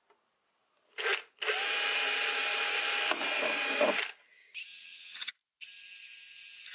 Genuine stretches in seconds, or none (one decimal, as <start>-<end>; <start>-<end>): 0.0-4.7; 5.3-6.7